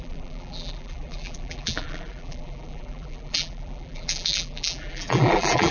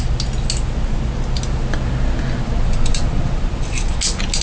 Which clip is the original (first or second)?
second